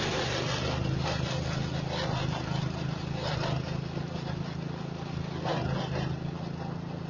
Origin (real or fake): real